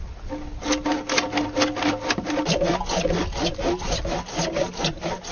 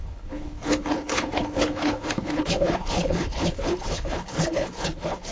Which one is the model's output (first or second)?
second